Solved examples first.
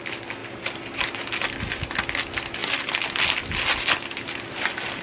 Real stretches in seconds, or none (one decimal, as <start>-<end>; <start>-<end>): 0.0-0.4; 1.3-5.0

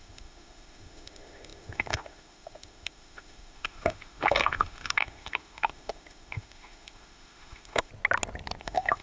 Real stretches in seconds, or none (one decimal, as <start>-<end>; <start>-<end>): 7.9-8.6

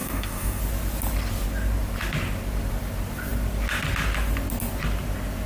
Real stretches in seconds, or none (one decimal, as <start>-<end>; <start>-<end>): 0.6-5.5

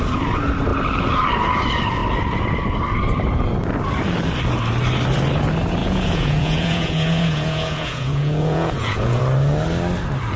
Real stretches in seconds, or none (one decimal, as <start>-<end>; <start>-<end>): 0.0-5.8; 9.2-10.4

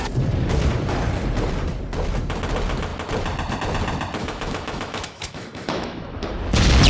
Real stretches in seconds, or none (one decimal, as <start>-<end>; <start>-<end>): 0.0-4.2; 6.3-6.9

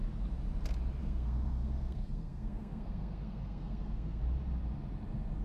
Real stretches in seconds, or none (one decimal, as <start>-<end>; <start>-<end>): 0.0-1.0; 4.2-5.4